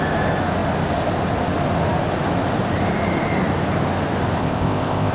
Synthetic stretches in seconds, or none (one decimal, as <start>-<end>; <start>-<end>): 4.4-5.1

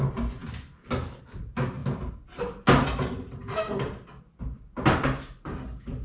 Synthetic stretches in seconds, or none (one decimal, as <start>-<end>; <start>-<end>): none